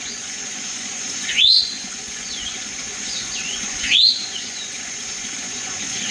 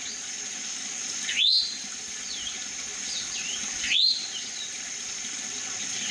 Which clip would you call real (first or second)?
second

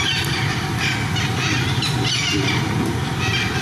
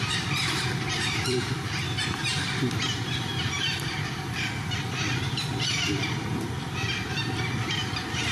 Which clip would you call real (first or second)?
first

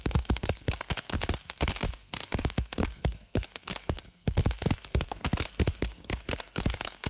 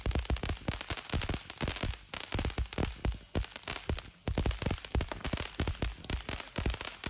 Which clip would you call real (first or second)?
second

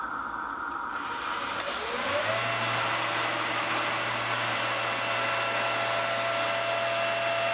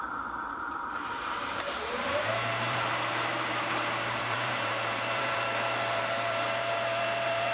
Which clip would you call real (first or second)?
first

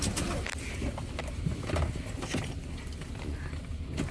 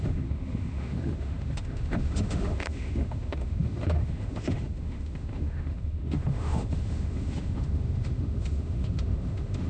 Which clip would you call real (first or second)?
first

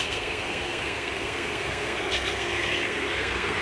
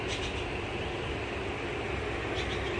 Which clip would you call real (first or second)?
second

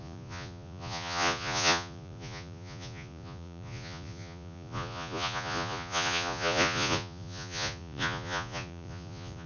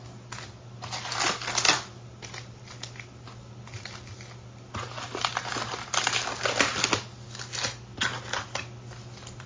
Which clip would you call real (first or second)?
second